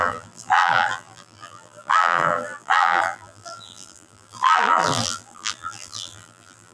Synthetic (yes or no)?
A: yes